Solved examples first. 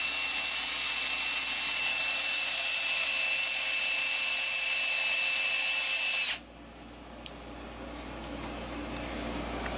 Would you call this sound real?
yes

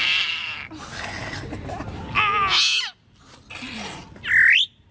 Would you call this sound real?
yes